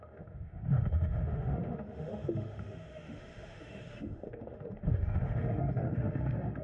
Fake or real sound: fake